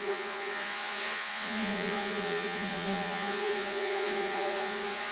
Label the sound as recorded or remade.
remade